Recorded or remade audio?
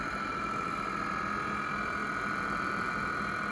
recorded